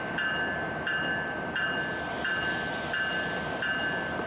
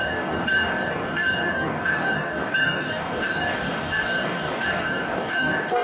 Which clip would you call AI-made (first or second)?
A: second